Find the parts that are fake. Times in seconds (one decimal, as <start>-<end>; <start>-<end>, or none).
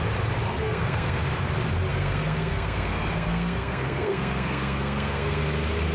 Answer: 0.4-1.2; 1.9-5.4